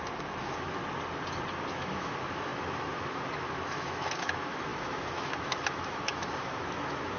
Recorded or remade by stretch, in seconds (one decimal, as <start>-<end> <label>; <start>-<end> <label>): 0.0-0.8 remade; 0.8-1.7 recorded; 1.7-7.2 remade